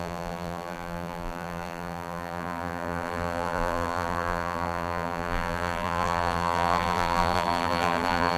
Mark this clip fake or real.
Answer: fake